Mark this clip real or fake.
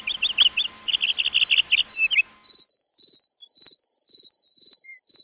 real